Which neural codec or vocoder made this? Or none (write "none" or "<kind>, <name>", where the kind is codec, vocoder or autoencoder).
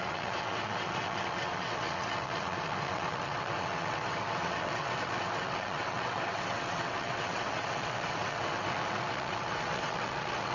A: vocoder, WaveNeXt